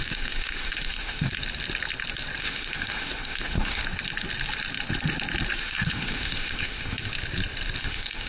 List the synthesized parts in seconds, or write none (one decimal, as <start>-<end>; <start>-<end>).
0.0-1.3; 2.4-3.8; 5.6-7.1; 7.8-8.3